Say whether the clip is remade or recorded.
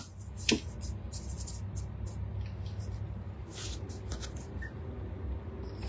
recorded